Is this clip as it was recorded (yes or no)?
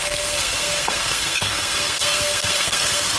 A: no